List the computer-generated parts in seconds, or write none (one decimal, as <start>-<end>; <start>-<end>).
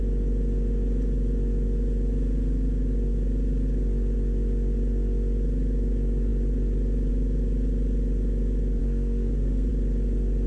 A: 8.8-9.7